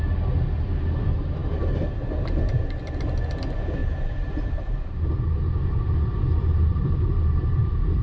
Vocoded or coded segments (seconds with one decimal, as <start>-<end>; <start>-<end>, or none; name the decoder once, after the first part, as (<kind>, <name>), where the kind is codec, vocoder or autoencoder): 3.8-5.1 (vocoder, BigVGAN v2)